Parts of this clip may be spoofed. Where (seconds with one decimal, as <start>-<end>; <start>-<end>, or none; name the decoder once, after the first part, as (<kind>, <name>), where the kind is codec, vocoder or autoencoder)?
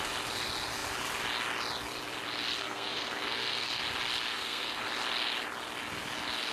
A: 2.6-3.8 (codec, SNAC); 4.3-4.8